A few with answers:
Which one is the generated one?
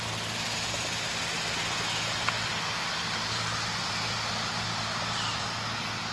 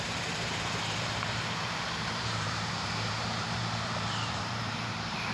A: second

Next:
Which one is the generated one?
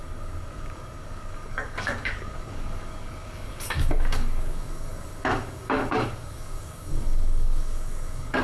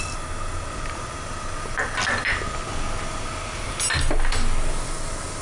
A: first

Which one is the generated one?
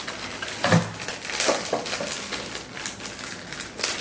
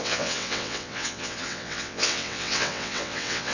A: second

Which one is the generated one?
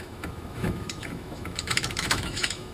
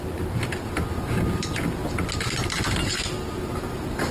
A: first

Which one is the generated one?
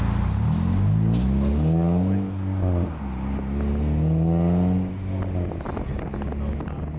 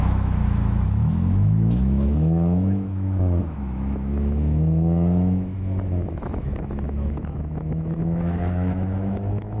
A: second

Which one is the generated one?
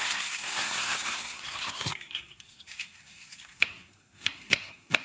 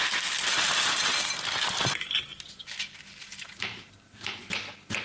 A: first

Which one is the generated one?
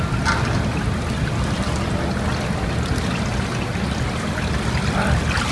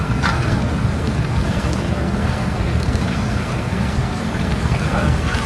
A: second